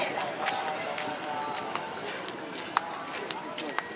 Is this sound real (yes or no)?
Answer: yes